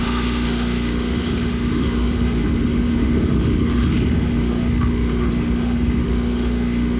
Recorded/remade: remade